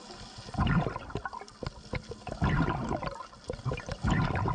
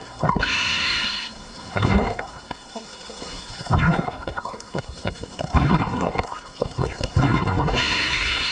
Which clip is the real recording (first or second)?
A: first